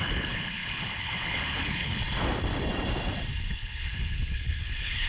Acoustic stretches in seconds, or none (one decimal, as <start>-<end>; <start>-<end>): 2.0-3.4